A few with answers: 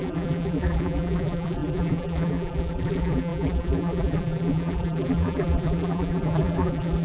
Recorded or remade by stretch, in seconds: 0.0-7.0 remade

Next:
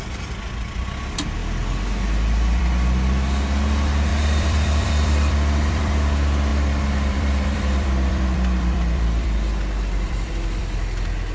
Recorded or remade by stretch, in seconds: 0.0-4.1 recorded; 4.1-5.9 remade; 5.9-6.5 recorded; 6.5-10.6 remade; 10.6-11.3 recorded